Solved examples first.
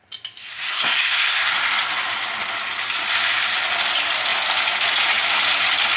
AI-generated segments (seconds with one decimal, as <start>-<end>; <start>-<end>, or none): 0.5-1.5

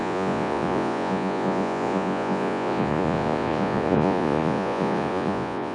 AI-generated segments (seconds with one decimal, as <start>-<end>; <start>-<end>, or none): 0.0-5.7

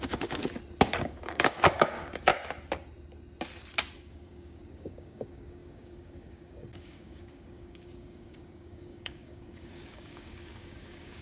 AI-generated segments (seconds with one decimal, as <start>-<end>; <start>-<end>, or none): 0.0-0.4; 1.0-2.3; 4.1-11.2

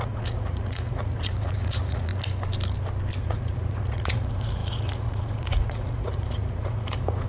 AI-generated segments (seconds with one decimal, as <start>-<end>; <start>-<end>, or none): 0.0-2.1; 3.2-7.3

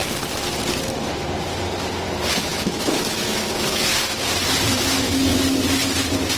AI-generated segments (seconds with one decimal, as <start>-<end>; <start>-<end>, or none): 2.3-3.9